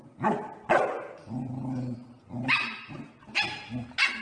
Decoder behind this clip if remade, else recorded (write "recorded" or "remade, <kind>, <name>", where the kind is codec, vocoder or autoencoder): recorded